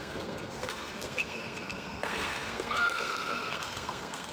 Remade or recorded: remade